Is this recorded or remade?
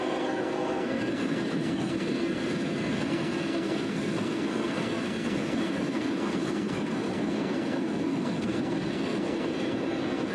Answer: remade